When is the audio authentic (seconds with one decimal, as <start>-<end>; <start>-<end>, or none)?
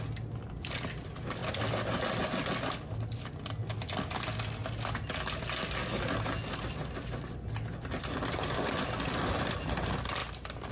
0.0-10.7